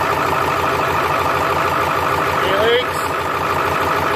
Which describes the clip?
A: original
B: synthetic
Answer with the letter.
A